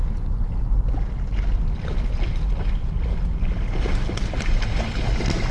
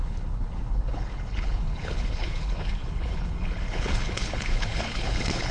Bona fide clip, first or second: first